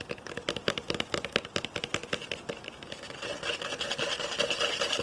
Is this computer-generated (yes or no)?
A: no